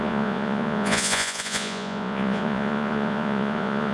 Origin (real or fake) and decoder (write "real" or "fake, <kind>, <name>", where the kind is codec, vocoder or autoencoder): fake, vocoder, Vocos